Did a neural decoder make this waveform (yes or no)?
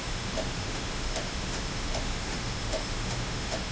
yes